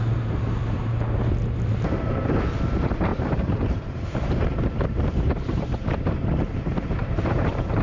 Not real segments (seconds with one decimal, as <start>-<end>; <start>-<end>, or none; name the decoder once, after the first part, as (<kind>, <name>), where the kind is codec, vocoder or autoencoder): 0.6-1.2 (vocoder, BigVGAN v2); 3.1-6.0; 7.0-7.8